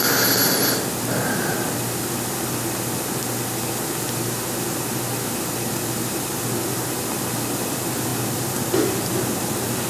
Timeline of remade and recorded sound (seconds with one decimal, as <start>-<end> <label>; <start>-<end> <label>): 0.0-9.9 recorded

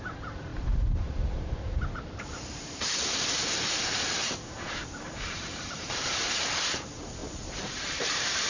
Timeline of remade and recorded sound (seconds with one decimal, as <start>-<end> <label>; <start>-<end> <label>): 0.0-8.5 remade

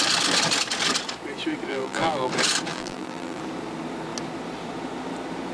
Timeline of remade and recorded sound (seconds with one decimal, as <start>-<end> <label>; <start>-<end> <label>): 0.0-1.7 recorded; 1.7-2.3 remade; 2.3-2.7 recorded; 2.7-3.4 remade; 3.4-5.5 recorded

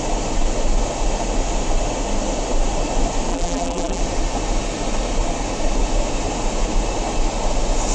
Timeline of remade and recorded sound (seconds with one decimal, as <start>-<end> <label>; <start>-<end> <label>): 0.0-3.3 recorded; 3.3-4.0 remade; 4.0-7.9 recorded

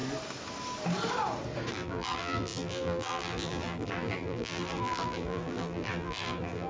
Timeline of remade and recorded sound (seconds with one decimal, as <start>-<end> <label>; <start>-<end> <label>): 0.0-1.7 recorded; 1.7-6.7 remade

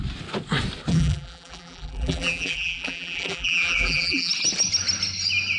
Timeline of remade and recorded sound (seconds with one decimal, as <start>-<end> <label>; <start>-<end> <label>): 0.0-0.9 recorded; 0.9-4.3 remade; 4.3-5.6 recorded